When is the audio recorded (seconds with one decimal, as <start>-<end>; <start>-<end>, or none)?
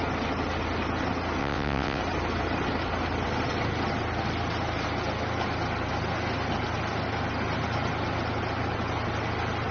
0.0-1.4; 2.0-9.7